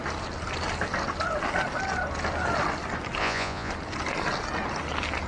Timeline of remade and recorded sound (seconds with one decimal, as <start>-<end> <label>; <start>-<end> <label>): 0.0-3.2 recorded; 3.2-3.7 remade; 3.7-5.3 recorded